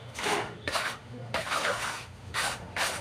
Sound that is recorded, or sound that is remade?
remade